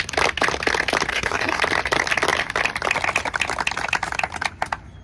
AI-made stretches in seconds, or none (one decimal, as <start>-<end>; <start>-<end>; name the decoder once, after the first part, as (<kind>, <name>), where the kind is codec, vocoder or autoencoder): 1.1-1.6 (codec, SNAC)